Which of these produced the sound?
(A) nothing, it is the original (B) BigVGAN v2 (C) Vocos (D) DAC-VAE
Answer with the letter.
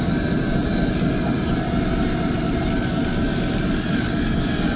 A